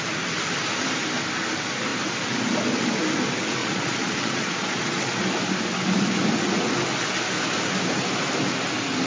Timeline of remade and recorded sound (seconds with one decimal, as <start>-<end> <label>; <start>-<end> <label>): 0.0-3.6 recorded; 3.6-5.2 remade; 5.2-9.1 recorded